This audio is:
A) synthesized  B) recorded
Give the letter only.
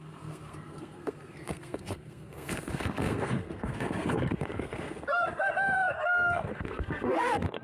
A